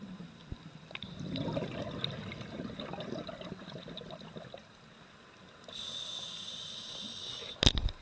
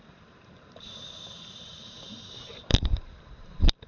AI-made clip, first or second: second